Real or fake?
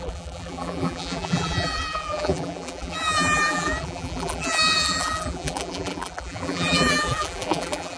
fake